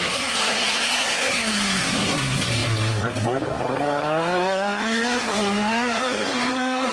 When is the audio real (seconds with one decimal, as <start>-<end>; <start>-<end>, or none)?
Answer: none